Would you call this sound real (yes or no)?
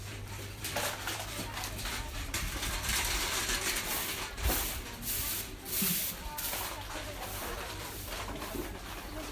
no